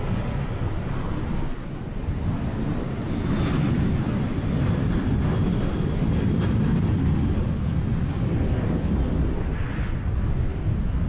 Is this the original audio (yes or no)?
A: no